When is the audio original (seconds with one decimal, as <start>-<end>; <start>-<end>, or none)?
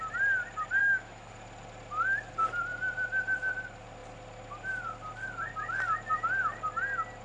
0.0-0.8; 1.3-7.2